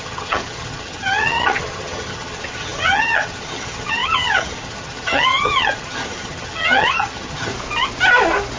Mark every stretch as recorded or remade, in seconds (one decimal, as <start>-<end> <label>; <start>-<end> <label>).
0.0-7.5 remade; 7.5-8.6 recorded